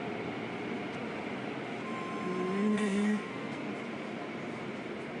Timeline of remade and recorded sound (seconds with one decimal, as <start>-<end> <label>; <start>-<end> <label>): 0.0-2.7 recorded; 2.7-3.7 remade; 3.7-5.2 recorded